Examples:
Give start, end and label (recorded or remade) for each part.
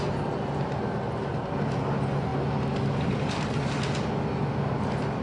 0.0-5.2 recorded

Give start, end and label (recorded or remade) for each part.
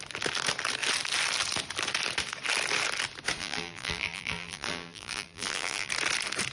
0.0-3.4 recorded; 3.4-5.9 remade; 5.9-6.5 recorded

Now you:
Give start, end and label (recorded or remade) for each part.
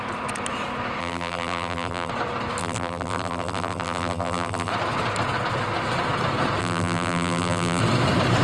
0.0-1.0 recorded; 1.0-2.1 remade; 2.1-2.6 recorded; 2.6-4.7 remade; 4.7-6.6 recorded; 6.6-7.8 remade; 7.8-8.4 recorded